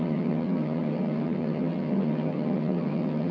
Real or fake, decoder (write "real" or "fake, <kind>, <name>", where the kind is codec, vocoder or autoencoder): fake, vocoder, HiFi-GAN